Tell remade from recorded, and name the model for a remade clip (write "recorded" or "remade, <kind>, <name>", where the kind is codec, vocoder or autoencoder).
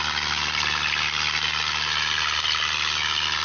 recorded